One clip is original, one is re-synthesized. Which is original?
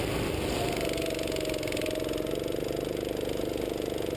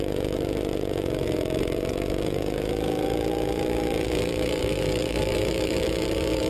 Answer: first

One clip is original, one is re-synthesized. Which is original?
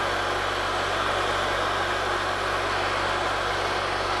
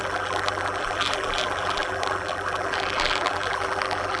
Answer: first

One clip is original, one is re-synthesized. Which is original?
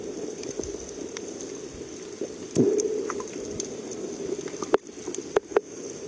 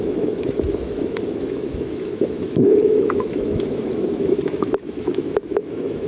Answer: first